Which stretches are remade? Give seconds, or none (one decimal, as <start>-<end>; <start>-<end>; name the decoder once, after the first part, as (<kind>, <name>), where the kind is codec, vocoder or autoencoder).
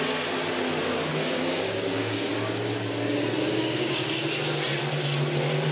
1.1-2.3 (codec, DAC); 3.5-4.1